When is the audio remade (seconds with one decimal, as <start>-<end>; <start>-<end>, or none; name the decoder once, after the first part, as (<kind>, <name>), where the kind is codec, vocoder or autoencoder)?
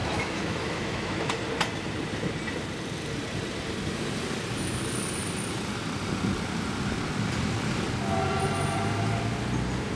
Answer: 0.0-1.3 (autoencoder, DAC-VAE)